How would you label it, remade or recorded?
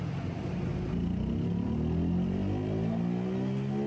recorded